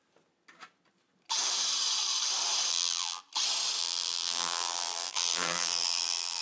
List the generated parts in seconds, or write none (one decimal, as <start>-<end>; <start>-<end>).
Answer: 2.7-3.2; 3.8-6.4